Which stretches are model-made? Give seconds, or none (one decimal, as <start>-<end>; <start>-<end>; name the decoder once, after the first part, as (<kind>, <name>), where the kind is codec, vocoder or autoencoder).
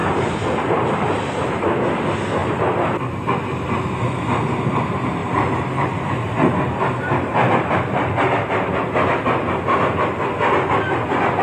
0.0-0.7 (vocoder, BigVGAN v2); 2.4-3.0; 5.2-7.7